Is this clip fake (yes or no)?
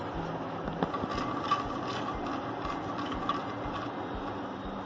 no